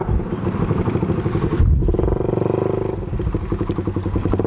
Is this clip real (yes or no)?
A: yes